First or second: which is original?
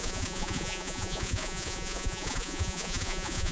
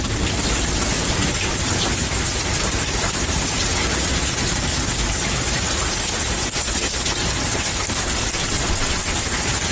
second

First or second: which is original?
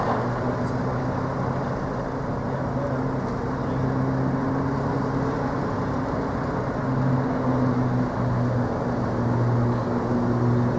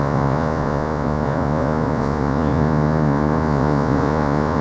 first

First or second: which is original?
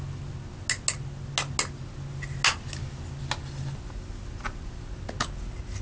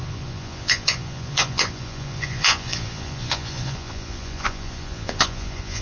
first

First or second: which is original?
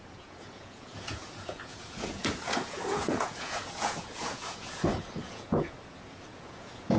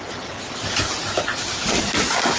second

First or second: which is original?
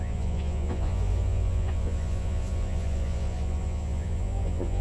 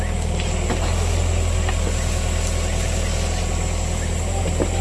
second